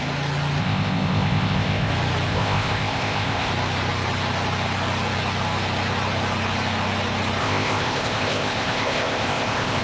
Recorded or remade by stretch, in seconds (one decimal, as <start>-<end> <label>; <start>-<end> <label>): 0.0-0.6 recorded; 0.6-1.9 remade; 1.9-2.3 recorded; 2.3-3.5 remade; 3.5-7.4 recorded; 7.4-9.8 remade